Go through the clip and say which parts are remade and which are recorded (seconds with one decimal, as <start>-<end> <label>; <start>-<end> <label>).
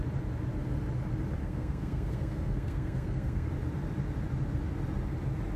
0.0-1.4 recorded; 1.4-3.5 remade; 3.5-5.6 recorded